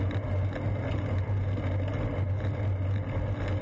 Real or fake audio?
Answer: real